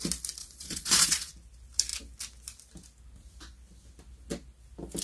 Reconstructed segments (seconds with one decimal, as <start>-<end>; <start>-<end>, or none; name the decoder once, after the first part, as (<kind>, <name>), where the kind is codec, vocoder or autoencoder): 0.4-1.3 (vocoder, Vocos)